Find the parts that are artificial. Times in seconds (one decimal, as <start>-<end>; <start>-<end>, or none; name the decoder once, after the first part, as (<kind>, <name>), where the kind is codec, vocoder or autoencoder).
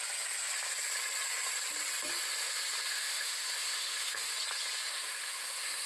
2.9-4.3 (autoencoder, DAC-VAE); 4.9-5.9